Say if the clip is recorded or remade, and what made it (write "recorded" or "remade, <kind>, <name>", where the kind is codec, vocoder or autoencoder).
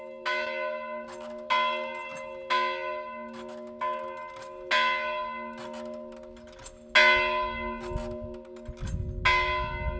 recorded